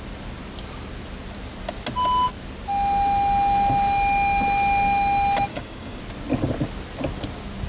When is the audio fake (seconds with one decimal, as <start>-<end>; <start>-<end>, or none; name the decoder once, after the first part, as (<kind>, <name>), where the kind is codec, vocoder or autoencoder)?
5.5-6.0 (codec, DAC)